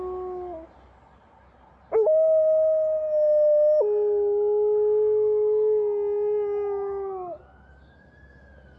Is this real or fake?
real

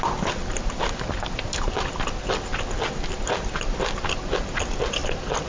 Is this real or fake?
real